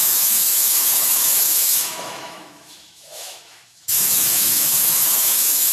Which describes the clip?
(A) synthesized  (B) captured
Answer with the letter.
A